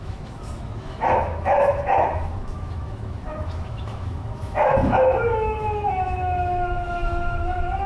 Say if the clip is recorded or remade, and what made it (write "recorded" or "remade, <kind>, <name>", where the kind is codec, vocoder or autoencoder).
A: remade, autoencoder, DAC-VAE